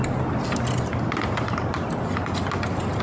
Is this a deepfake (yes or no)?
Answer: no